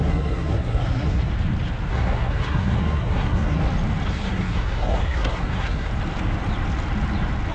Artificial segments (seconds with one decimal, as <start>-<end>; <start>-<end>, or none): 0.0-1.3; 1.9-3.6; 4.1-5.9